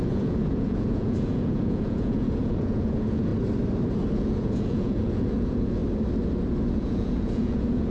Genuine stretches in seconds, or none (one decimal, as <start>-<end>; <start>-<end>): 3.3-4.1; 5.8-6.6